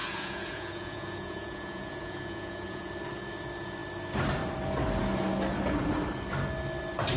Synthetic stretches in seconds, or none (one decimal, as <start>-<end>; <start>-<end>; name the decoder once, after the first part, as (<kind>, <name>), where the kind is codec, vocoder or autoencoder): 0.0-2.9 (vocoder, Vocos)